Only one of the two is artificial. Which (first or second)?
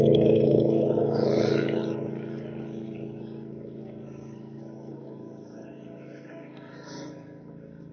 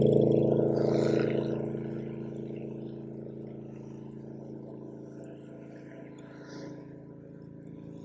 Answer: first